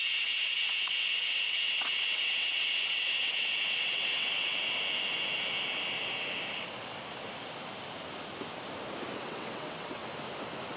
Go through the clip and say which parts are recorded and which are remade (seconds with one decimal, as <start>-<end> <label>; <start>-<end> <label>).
0.0-4.6 remade; 4.6-9.2 recorded; 9.2-10.0 remade; 10.0-10.8 recorded